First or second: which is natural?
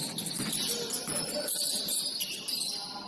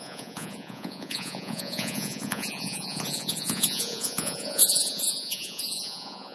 first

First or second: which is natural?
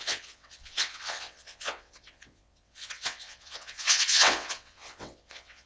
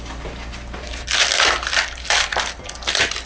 second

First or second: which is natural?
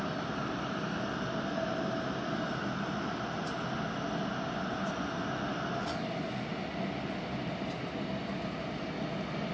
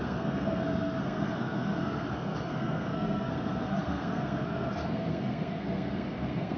first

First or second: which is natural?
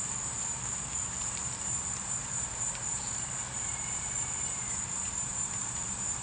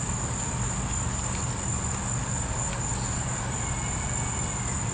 second